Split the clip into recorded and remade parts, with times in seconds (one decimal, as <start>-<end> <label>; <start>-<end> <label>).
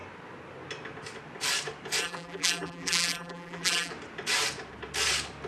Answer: 0.0-2.0 recorded; 2.0-3.9 remade; 3.9-5.5 recorded